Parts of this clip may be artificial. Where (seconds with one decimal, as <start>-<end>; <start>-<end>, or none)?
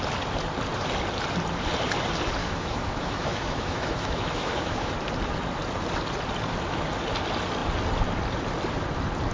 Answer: 2.4-4.9